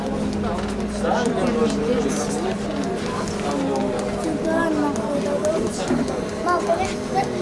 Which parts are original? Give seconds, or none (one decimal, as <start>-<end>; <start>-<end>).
0.0-7.4